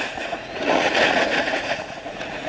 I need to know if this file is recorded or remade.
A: remade